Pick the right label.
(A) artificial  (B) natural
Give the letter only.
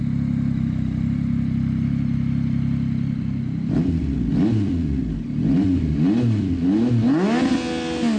B